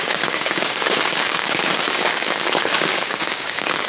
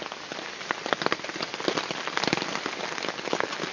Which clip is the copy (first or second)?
first